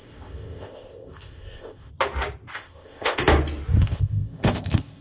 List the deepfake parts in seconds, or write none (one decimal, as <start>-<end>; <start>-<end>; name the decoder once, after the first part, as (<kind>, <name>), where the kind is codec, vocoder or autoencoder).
0.0-1.9 (codec, ZipCodec); 2.5-3.2; 3.8-5.0